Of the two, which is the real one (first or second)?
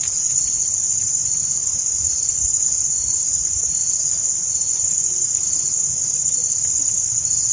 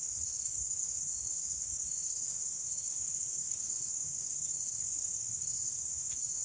first